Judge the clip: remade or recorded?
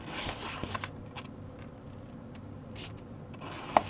remade